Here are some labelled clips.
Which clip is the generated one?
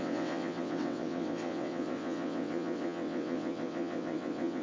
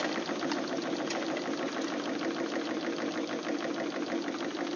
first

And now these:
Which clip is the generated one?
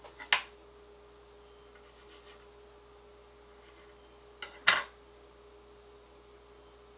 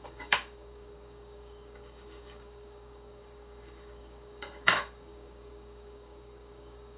second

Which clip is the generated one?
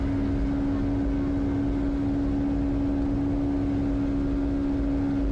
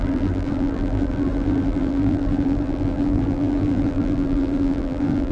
second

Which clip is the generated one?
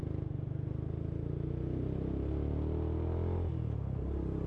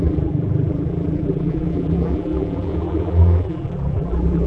second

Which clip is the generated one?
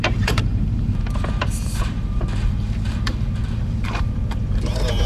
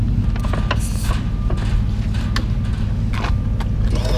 first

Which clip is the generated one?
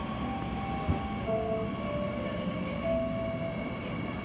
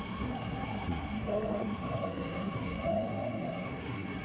second